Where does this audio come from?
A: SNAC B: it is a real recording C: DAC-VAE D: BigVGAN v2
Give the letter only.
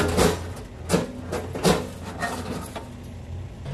B